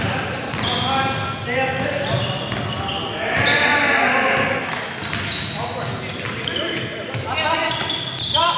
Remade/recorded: recorded